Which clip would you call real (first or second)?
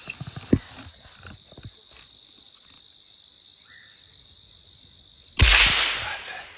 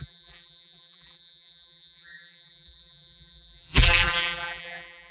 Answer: first